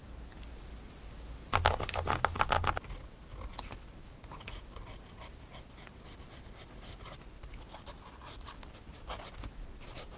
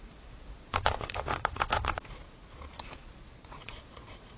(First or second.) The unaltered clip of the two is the first